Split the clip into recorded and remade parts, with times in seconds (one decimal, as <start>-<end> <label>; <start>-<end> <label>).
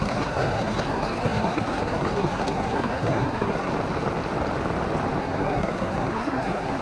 0.0-3.7 remade; 3.7-5.2 recorded; 5.2-6.8 remade